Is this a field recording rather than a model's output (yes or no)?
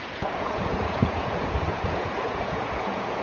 no